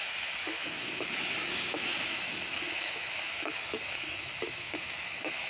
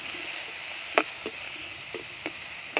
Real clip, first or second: second